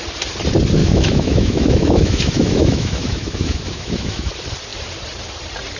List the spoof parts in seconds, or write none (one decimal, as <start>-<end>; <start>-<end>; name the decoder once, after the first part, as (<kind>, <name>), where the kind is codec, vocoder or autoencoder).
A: 0.8-4.3 (autoencoder, DAC-VAE)